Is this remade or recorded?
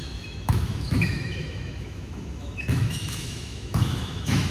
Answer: remade